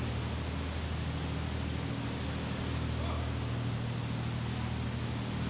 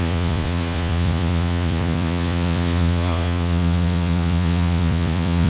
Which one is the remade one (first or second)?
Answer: second